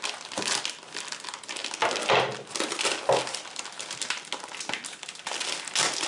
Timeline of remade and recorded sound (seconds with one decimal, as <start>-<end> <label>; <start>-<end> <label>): 0.0-6.1 recorded